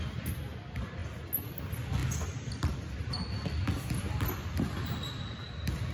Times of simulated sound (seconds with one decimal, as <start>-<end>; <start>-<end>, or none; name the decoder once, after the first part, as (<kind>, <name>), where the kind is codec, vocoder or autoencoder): none